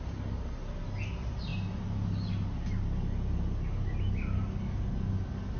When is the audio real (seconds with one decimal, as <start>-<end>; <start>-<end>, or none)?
0.0-5.6